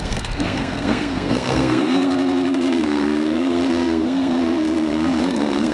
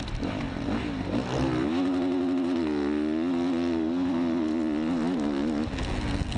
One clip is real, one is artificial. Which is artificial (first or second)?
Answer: first